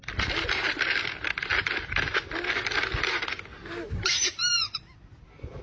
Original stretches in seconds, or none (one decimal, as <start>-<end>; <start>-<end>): 0.0-5.6